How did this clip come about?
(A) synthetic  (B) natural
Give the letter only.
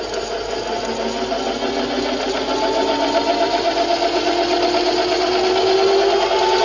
B